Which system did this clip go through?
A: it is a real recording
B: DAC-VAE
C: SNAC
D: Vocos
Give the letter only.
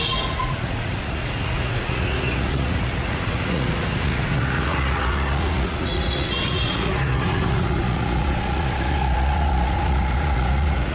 D